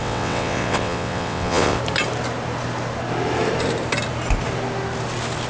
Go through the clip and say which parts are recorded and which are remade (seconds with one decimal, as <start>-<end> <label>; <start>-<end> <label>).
0.0-1.8 remade; 1.8-5.5 recorded